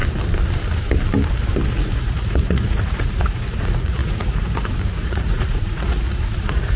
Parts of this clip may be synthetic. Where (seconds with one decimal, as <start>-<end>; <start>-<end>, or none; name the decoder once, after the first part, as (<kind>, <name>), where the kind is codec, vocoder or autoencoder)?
1.7-6.8 (vocoder, Vocos)